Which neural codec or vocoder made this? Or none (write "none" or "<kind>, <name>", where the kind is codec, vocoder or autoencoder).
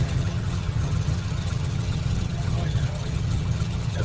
vocoder, HiFi-GAN